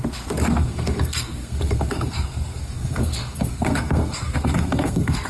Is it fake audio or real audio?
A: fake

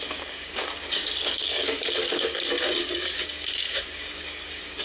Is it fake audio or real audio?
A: fake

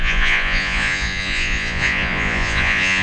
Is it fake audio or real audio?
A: fake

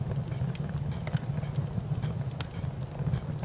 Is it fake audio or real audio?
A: real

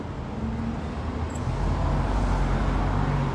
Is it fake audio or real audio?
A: real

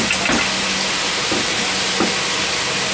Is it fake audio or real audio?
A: real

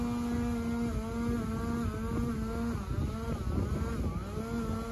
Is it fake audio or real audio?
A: real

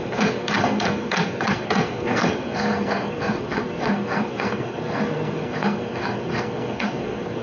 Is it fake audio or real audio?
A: fake